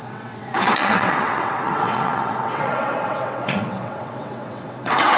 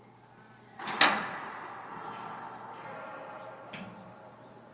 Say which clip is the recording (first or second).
second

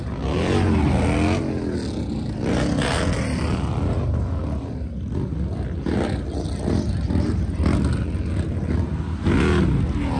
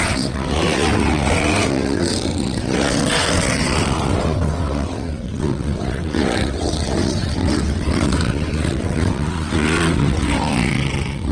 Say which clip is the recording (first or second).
first